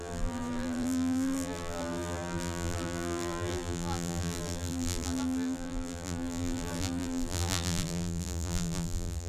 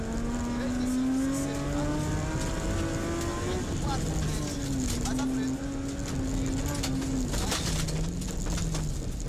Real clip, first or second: second